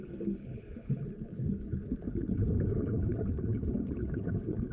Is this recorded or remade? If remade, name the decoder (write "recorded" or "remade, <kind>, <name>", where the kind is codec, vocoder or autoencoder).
remade, codec, HILCodec